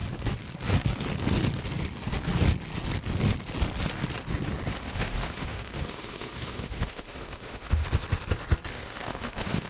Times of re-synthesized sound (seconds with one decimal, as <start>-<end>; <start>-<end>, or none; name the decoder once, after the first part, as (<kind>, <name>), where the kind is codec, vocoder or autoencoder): 4.8-7.8 (autoencoder, DAC-VAE); 8.7-9.7